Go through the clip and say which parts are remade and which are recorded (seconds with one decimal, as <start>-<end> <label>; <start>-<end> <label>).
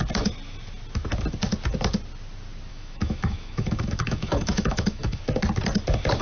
0.0-2.7 recorded; 2.7-5.2 remade; 5.2-6.2 recorded